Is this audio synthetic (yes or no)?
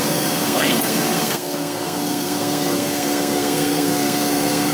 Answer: yes